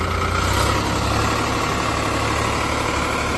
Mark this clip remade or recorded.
recorded